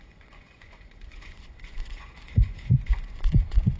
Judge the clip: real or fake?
fake